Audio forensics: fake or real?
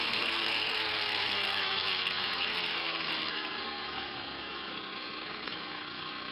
fake